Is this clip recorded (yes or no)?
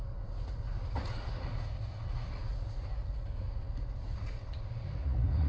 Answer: no